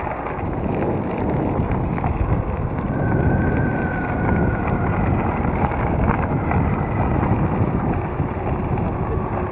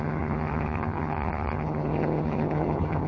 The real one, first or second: first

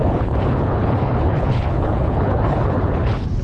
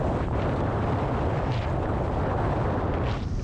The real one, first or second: second